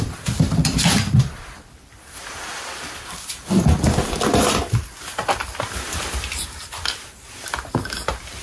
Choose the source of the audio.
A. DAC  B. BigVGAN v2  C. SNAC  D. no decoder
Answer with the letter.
B